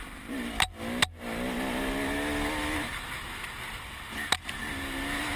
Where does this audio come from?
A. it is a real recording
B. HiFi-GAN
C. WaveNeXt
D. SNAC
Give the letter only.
A